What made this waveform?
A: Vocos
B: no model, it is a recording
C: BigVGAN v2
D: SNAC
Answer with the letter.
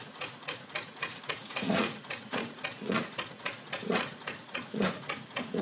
A